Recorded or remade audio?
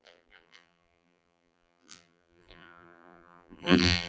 remade